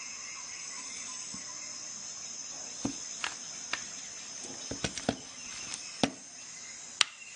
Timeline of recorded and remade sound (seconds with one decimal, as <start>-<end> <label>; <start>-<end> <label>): 0.0-7.4 recorded